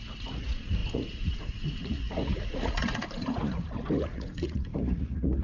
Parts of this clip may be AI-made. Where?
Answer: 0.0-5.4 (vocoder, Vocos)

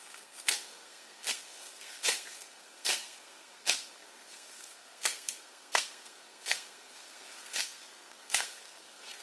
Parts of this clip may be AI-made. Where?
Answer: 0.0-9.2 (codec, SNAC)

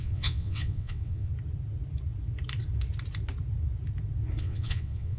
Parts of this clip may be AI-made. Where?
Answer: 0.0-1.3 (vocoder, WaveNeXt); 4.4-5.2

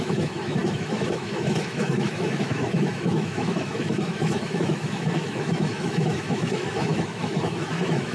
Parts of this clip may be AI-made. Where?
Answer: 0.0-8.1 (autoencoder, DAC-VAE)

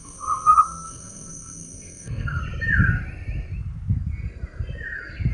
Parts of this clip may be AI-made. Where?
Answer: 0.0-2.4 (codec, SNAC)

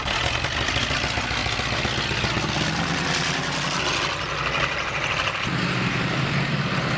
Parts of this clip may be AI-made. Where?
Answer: none